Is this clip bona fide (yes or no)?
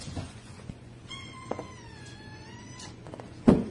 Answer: no